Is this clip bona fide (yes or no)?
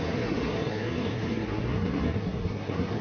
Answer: no